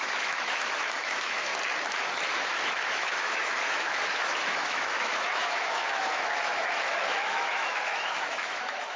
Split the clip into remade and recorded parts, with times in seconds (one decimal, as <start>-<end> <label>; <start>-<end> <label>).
0.0-1.5 remade; 1.5-2.3 recorded; 2.3-9.0 remade

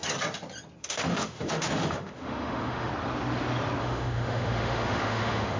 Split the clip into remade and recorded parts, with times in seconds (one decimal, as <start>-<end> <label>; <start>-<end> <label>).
0.0-0.8 recorded; 0.8-2.9 remade; 2.9-3.8 recorded; 3.8-5.6 remade

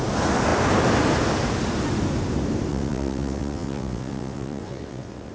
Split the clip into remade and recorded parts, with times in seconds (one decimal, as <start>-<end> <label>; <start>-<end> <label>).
0.0-2.7 recorded; 2.7-5.3 remade

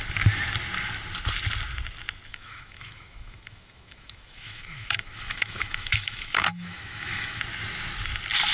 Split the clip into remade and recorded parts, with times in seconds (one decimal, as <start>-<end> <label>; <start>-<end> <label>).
0.0-2.3 recorded; 2.3-7.4 remade; 7.4-8.5 recorded

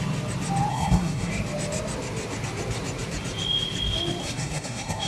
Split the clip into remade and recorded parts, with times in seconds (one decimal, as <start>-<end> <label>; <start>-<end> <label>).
0.0-0.7 recorded; 0.7-1.3 remade; 1.3-4.2 recorded; 4.2-5.1 remade

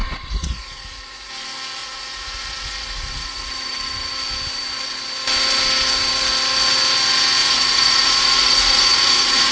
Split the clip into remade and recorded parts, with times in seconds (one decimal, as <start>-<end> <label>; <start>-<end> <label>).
0.0-1.3 remade; 1.3-1.8 recorded; 1.8-3.5 remade; 3.5-7.4 recorded; 7.4-9.5 remade